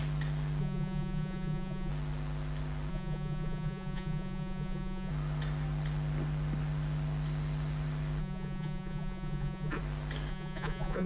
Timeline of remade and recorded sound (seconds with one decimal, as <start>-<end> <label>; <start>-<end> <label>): 0.0-0.6 recorded; 0.6-1.9 remade; 1.9-2.9 recorded; 2.9-5.1 remade; 5.1-8.2 recorded; 8.2-9.8 remade; 9.8-10.3 recorded; 10.3-11.1 remade